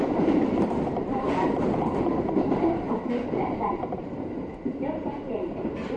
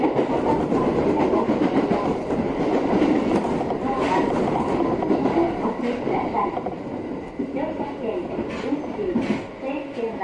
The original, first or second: second